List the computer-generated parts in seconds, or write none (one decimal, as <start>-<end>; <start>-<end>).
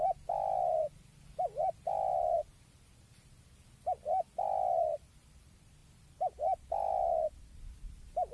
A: none